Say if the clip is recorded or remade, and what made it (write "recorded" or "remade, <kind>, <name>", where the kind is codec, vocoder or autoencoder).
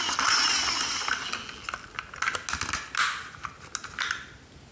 recorded